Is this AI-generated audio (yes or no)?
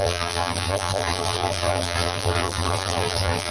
yes